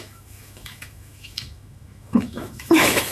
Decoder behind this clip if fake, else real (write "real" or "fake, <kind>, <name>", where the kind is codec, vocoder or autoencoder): fake, autoencoder, DAC-VAE